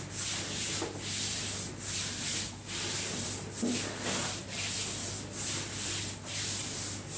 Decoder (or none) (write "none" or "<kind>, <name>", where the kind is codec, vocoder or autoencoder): none